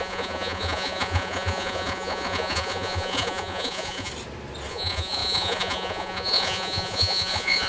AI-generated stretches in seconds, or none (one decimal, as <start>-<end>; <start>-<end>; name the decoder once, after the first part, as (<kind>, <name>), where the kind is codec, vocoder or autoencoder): 0.0-4.1 (vocoder, Vocos); 4.7-7.7